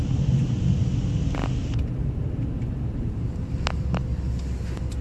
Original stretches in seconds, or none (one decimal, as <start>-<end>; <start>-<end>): 0.0-5.0

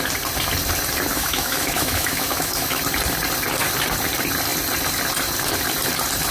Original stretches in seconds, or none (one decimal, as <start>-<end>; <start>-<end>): 0.0-1.1; 2.8-6.3